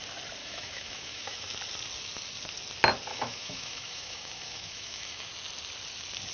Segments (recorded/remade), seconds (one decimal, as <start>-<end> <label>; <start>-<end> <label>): 0.0-0.4 recorded; 0.4-1.5 remade; 1.5-3.1 recorded; 3.1-5.3 remade; 5.3-6.3 recorded